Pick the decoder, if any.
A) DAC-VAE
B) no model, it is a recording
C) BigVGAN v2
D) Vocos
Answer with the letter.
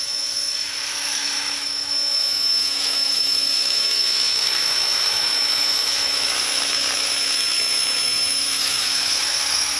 A